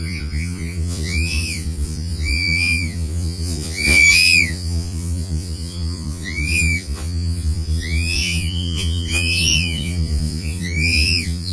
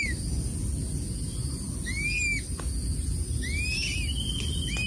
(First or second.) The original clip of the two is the second